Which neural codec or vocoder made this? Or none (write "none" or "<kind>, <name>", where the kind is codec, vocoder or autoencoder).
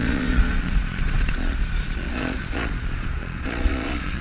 vocoder, Vocos